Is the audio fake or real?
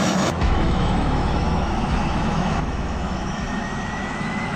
fake